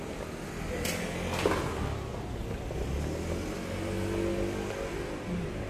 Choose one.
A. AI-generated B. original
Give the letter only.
B